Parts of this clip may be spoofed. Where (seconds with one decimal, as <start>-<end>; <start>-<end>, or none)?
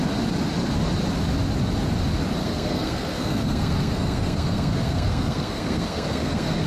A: 2.4-6.7